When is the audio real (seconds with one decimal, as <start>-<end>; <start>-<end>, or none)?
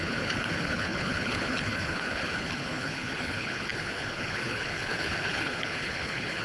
none